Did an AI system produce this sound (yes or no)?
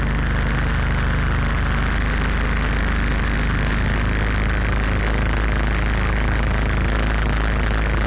no